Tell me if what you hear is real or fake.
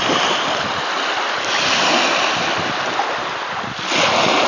real